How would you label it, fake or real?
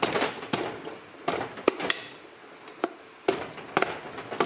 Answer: real